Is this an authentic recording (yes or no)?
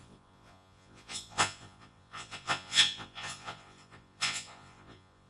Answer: no